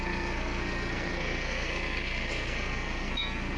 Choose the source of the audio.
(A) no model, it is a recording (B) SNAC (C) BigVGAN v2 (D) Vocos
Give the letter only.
B